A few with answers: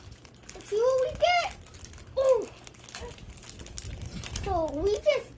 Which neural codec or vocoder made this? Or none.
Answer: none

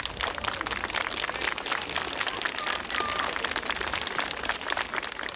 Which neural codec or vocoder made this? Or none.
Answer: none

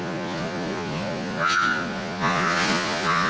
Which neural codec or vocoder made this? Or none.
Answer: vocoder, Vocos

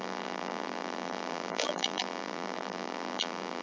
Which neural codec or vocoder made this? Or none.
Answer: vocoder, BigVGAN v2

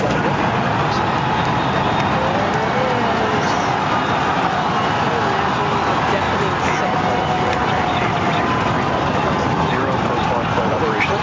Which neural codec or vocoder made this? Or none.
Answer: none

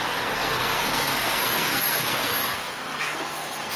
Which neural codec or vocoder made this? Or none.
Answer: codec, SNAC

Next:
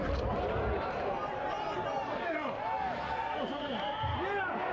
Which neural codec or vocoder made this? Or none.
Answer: none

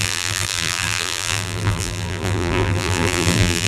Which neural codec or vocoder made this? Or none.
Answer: vocoder, BigVGAN v2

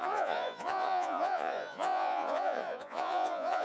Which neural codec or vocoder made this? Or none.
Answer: vocoder, Vocos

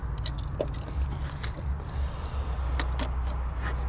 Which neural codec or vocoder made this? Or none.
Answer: none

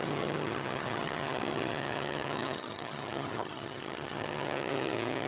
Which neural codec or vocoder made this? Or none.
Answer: vocoder, HiFi-GAN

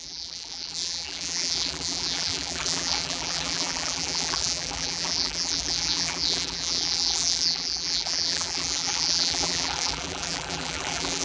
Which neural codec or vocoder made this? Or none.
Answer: vocoder, BigVGAN v2